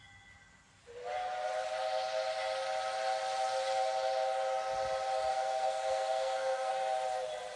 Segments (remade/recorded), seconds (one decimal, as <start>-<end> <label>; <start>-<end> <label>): 0.0-5.3 recorded; 5.3-6.7 remade; 6.7-7.6 recorded